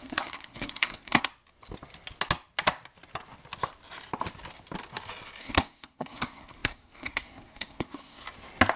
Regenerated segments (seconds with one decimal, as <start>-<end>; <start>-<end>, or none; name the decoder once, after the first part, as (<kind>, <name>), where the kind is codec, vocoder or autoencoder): 0.0-1.3 (codec, SNAC); 5.4-8.2